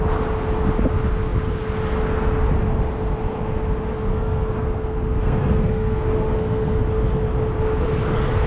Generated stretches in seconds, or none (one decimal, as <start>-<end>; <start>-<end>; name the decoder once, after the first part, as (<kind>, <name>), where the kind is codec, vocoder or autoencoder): 4.1-6.8 (codec, SNAC)